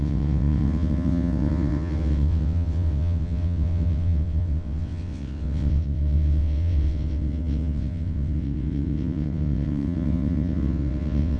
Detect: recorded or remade remade